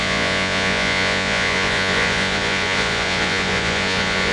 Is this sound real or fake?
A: fake